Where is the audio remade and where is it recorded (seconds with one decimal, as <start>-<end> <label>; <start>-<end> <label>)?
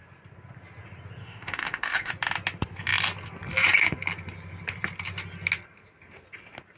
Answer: 0.0-1.2 recorded; 1.2-2.1 remade; 2.1-6.8 recorded